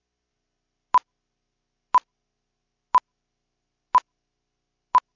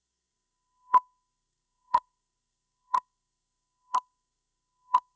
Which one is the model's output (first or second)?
second